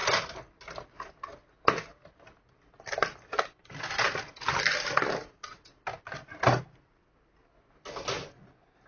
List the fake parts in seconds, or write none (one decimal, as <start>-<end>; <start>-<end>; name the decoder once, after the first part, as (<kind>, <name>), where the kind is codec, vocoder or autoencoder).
none